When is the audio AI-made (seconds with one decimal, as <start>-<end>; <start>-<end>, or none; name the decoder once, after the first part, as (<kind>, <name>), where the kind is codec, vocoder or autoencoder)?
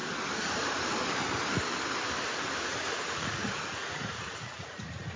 2.7-5.2 (vocoder, Vocos)